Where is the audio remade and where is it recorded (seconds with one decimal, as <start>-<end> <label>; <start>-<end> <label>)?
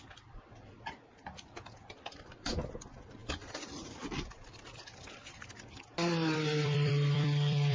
0.0-7.7 remade